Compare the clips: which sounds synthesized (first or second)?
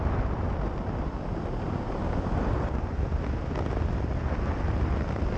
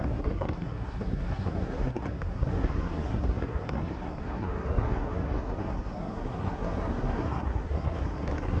second